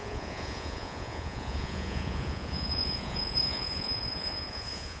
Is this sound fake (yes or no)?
yes